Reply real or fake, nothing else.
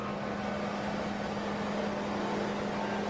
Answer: real